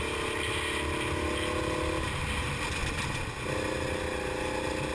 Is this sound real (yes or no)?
yes